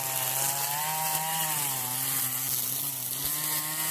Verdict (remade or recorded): recorded